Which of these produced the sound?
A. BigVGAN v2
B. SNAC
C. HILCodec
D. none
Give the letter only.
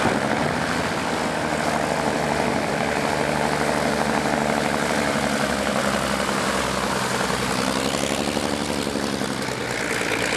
D